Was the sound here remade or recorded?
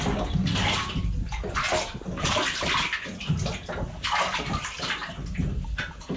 recorded